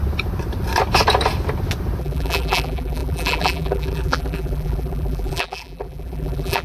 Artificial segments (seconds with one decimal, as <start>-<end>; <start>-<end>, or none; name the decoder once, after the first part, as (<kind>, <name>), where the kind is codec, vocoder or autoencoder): 2.0-6.6 (vocoder, BigVGAN v2)